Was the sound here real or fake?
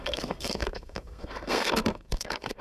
fake